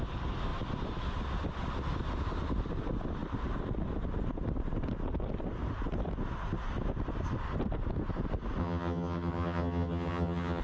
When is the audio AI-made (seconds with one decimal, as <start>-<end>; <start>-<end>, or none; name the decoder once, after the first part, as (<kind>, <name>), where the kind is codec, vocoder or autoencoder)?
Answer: 8.6-10.6 (vocoder, HiFi-GAN)